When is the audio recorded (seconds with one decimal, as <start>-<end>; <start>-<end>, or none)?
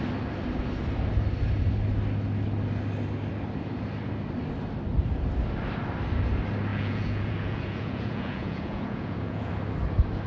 0.0-6.7; 9.5-10.3